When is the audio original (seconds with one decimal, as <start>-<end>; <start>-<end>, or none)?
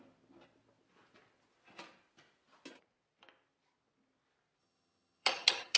0.0-4.6